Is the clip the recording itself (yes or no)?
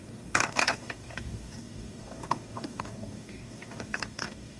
no